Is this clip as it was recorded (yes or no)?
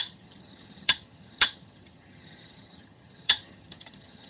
no